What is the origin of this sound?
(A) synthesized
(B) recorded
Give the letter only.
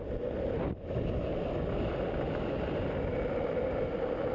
B